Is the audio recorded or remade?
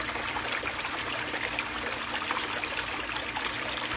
recorded